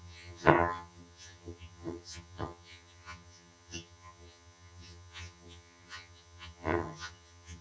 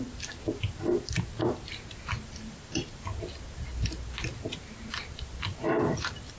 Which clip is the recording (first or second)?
second